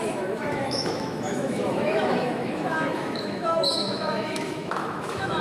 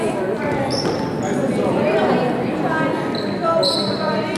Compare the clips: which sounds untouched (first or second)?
second